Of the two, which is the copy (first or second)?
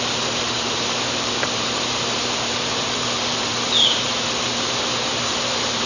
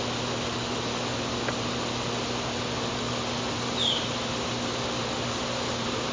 first